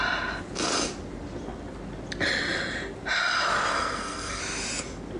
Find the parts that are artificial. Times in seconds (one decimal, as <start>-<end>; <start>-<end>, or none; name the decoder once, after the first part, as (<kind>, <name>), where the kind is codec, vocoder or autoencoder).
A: 3.7-4.4 (codec, SNAC)